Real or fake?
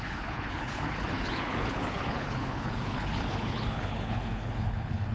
fake